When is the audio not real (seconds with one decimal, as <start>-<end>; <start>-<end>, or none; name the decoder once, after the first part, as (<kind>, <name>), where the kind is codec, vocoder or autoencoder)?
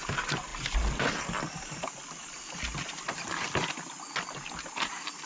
none